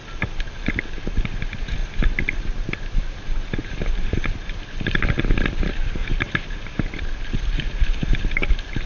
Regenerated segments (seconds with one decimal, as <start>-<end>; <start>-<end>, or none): 0.0-0.5; 1.8-3.1; 6.0-8.5

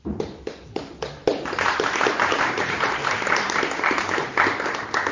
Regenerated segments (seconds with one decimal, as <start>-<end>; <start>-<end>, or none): 1.2-4.3

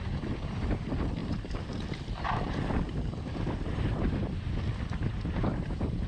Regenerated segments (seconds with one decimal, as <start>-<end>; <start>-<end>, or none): 1.2-4.5

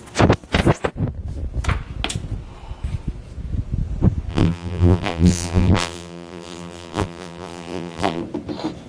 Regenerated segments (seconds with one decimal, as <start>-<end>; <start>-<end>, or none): 4.3-8.2